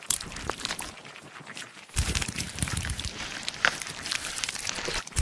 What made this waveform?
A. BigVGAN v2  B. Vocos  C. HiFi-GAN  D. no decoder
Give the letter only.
A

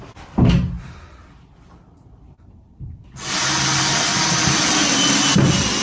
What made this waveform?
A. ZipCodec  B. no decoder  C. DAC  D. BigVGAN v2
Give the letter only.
D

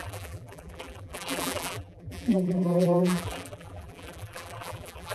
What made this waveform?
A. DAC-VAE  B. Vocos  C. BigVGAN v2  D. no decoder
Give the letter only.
C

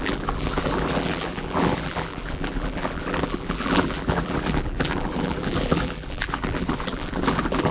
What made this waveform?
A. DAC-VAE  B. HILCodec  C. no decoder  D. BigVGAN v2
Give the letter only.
D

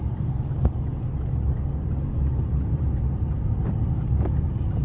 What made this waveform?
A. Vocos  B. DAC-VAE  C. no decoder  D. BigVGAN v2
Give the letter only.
C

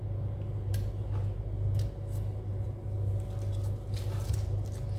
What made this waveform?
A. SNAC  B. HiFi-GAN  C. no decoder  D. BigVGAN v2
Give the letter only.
C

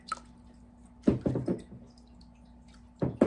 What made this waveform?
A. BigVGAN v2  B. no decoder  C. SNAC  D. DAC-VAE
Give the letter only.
B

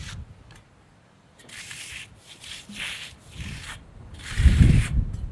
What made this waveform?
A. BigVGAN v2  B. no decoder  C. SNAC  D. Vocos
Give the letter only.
B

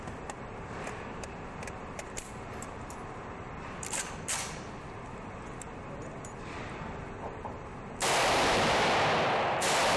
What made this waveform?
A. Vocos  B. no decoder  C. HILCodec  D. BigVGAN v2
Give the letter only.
D